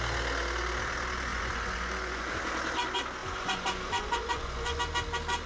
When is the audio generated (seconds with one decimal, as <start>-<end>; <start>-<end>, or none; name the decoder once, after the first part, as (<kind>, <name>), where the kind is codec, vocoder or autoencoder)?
1.3-2.3 (vocoder, Vocos); 3.2-4.8